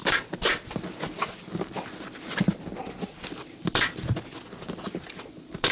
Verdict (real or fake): real